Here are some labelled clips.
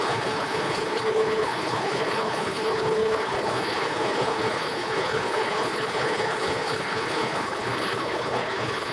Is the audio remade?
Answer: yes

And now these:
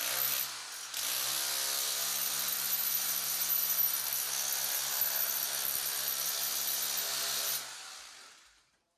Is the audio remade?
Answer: no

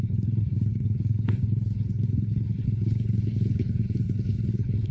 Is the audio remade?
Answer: yes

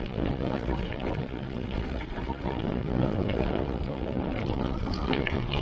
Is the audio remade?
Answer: yes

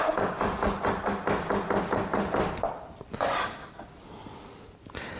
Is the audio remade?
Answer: no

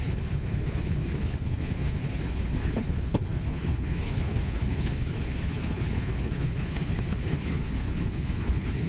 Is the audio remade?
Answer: yes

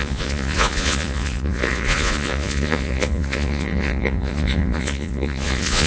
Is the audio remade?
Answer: yes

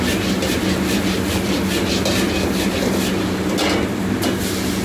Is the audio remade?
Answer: no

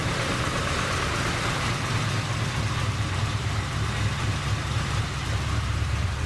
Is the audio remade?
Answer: yes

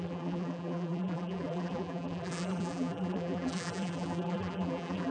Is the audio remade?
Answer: yes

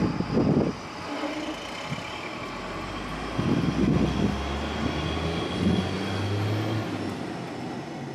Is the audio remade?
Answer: no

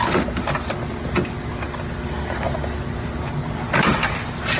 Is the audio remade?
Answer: no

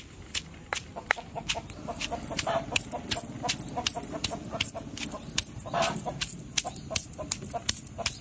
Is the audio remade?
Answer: no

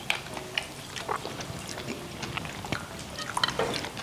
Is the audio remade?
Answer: no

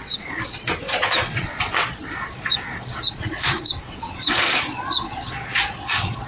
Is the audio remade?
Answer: yes